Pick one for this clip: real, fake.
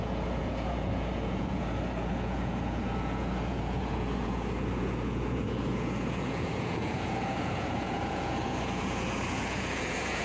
fake